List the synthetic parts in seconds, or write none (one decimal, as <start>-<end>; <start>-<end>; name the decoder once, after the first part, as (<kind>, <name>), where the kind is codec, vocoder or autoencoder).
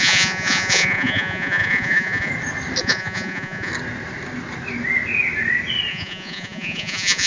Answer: 0.0-2.3 (vocoder, Vocos); 2.8-3.7; 5.9-7.3